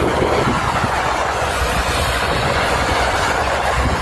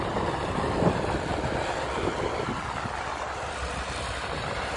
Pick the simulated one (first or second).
first